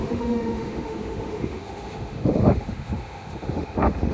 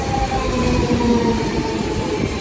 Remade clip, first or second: first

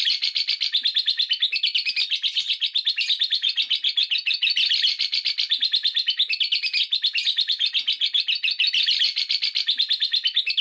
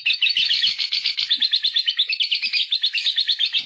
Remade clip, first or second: second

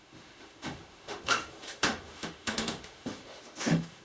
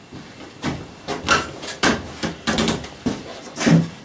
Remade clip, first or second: first